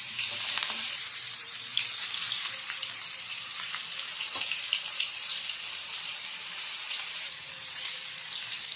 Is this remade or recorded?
remade